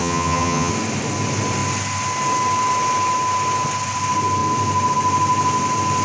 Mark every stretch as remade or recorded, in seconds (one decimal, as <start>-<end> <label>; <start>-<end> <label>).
0.0-0.7 remade; 0.7-6.0 recorded